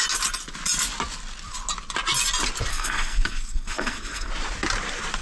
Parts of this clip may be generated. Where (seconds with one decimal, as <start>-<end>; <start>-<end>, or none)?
2.7-4.3